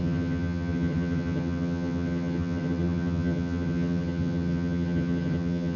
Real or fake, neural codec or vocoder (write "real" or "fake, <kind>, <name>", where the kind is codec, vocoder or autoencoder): fake, vocoder, HiFi-GAN